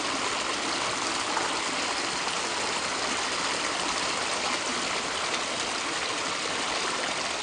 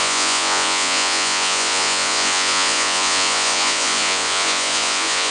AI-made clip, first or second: second